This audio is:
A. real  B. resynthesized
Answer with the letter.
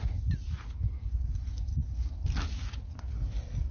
A